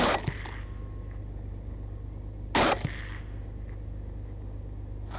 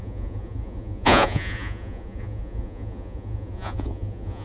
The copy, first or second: second